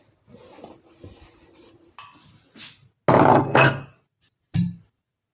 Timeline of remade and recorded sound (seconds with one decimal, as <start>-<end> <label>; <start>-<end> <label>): 0.0-3.3 recorded; 3.3-3.8 remade; 3.8-5.3 recorded